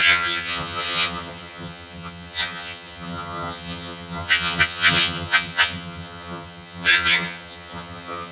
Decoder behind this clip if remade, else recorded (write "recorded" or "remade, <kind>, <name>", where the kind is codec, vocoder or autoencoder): remade, vocoder, HiFi-GAN